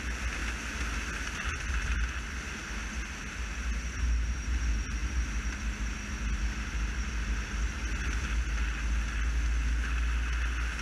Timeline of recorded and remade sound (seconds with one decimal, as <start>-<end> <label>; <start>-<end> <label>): 0.0-10.8 recorded